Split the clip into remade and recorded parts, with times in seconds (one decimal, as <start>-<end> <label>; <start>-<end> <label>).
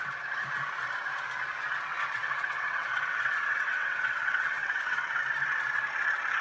0.0-1.9 recorded; 1.9-5.2 remade; 5.2-6.4 recorded